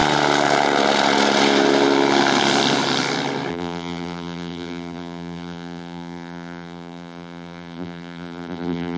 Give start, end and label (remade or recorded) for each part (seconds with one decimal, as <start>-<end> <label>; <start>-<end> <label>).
0.0-3.5 recorded; 3.5-9.0 remade